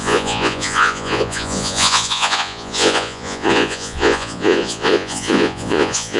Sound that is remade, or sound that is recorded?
remade